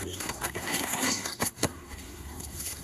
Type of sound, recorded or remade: remade